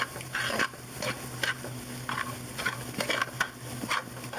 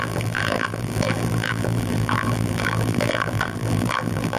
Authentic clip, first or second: first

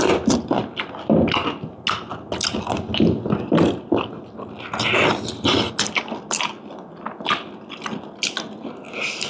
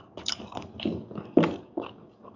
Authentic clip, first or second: first